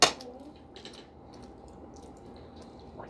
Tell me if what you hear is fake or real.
real